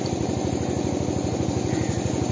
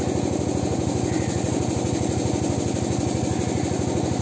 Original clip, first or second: second